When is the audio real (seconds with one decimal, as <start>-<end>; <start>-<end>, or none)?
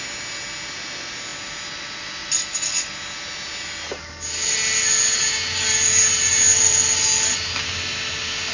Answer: 0.0-8.5